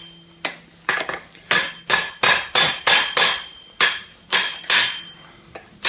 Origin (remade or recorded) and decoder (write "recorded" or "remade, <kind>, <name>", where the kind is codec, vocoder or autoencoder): recorded